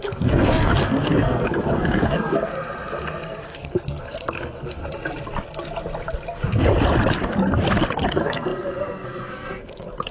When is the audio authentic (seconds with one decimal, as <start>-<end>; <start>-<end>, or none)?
2.5-3.4; 4.8-8.1